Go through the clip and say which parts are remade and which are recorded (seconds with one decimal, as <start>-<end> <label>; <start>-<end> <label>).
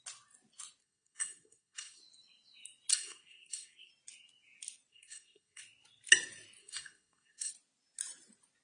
0.0-0.8 recorded; 0.8-2.0 remade; 2.0-2.9 recorded; 2.9-3.9 remade; 3.9-4.9 recorded; 4.9-5.6 remade; 5.6-6.6 recorded; 6.6-7.5 remade; 7.5-8.6 recorded